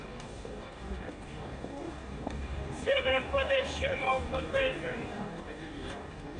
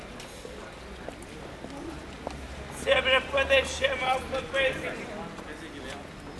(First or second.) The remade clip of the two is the first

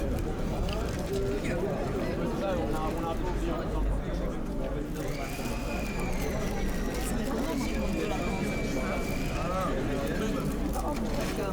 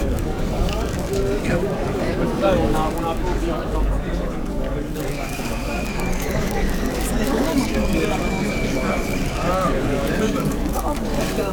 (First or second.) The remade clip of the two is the second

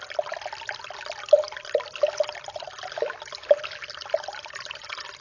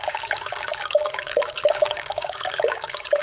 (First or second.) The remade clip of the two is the second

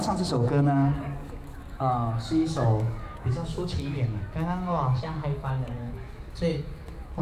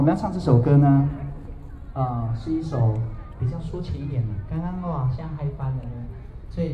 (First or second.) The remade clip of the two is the first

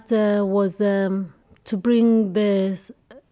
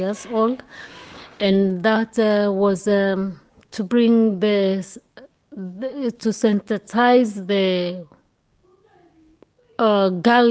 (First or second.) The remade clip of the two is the second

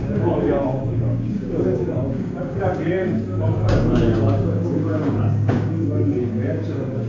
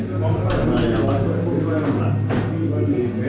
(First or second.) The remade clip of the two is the first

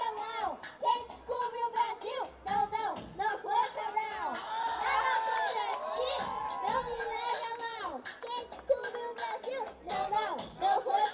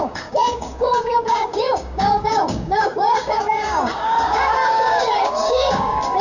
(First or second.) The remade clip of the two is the second